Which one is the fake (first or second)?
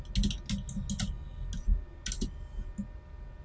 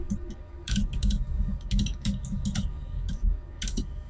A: second